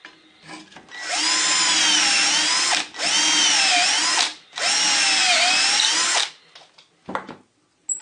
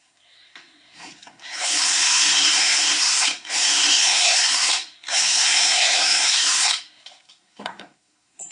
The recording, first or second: first